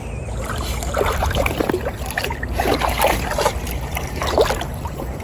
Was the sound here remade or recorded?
recorded